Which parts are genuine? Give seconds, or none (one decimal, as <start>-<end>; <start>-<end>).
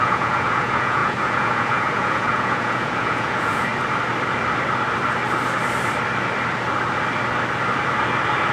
3.7-8.5